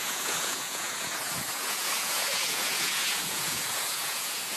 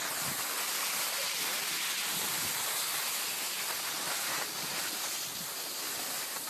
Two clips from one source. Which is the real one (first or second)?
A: second